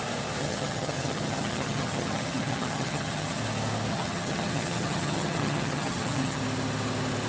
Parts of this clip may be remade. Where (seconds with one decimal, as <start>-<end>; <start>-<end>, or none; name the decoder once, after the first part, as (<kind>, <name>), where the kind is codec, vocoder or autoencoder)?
0.4-3.4 (vocoder, HiFi-GAN); 3.9-6.4